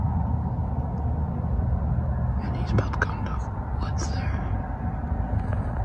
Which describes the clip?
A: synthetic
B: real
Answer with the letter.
B